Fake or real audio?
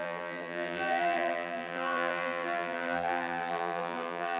fake